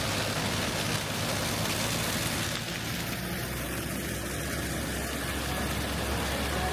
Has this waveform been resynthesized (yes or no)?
no